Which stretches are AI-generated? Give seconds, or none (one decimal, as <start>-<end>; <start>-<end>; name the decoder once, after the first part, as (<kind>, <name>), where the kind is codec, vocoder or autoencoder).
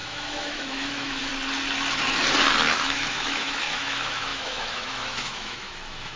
0.0-1.3 (autoencoder, DAC-VAE); 2.8-6.2